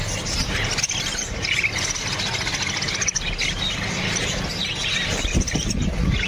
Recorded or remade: recorded